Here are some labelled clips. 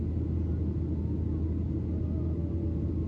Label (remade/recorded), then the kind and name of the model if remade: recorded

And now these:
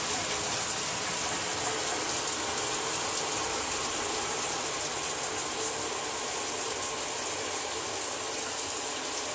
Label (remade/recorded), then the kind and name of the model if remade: recorded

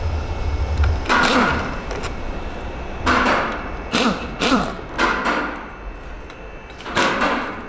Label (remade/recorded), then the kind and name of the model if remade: remade, vocoder, BigVGAN v2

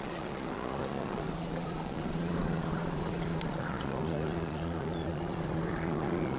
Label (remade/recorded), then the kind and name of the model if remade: remade, vocoder, Vocos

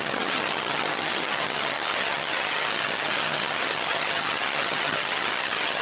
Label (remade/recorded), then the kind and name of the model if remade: remade, vocoder, HiFi-GAN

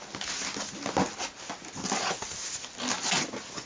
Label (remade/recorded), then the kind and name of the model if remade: recorded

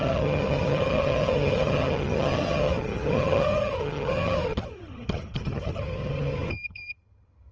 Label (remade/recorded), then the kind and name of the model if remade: remade, vocoder, HiFi-GAN